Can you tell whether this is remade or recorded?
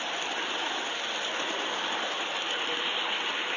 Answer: recorded